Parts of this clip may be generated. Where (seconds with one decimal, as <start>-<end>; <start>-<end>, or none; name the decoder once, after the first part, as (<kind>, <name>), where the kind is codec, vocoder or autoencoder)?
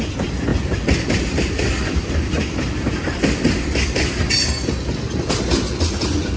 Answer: 0.5-4.3 (vocoder, BigVGAN v2)